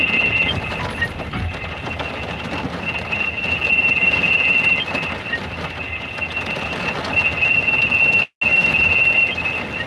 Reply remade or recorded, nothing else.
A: recorded